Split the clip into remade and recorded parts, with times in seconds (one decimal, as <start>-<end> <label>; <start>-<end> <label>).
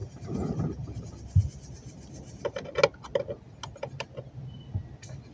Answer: 0.0-5.3 recorded